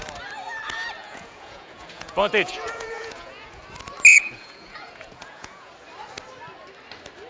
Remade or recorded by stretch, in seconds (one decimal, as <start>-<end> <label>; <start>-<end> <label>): 0.0-1.0 recorded; 1.0-3.6 remade; 3.6-4.1 recorded; 4.1-5.7 remade; 5.7-7.3 recorded